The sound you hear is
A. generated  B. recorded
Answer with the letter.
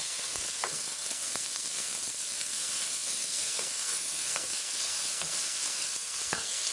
A